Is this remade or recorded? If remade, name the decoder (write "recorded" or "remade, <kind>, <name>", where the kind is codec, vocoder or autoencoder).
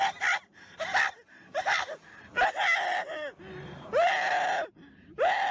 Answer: recorded